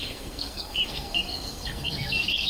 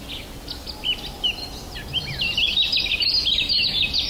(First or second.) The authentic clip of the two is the second